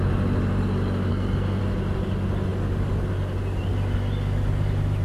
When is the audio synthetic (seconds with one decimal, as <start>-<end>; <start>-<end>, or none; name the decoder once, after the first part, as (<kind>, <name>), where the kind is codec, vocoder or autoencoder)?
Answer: 1.1-1.6 (codec, SNAC)